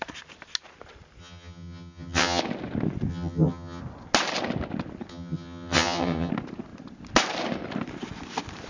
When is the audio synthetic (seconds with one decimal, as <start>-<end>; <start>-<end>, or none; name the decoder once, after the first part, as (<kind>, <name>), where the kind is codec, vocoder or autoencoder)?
1.2-2.4 (vocoder, HiFi-GAN); 3.1-3.8; 5.1-6.3